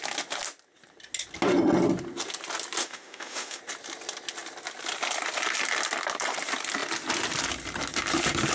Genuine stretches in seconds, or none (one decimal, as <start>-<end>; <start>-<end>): 0.0-2.8; 3.6-8.5